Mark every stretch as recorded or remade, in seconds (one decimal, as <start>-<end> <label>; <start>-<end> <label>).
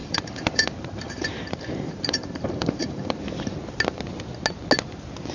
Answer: 0.0-3.2 remade; 3.2-5.3 recorded